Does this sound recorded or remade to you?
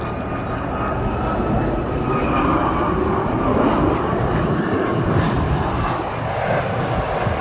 recorded